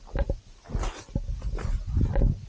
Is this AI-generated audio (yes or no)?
no